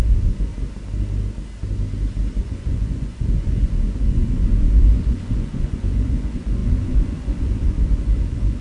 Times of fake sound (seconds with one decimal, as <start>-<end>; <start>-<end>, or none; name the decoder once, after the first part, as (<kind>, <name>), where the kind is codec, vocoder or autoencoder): 0.0-0.5 (vocoder, Vocos); 2.4-8.6